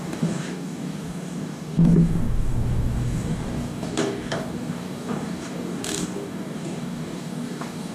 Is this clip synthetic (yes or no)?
yes